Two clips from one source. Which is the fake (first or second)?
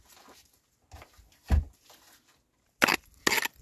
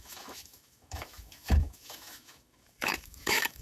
second